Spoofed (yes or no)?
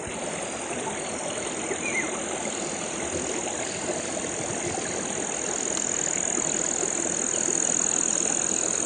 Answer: no